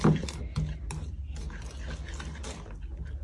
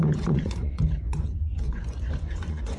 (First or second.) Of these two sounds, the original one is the first